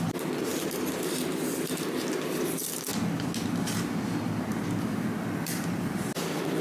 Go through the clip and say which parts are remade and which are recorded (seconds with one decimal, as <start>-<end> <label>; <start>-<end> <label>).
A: 0.0-6.6 recorded